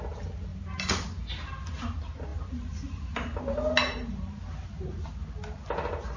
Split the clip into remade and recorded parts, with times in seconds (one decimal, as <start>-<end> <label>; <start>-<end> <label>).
0.0-6.2 recorded